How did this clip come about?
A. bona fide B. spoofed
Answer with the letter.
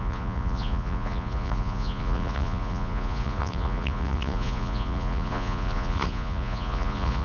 B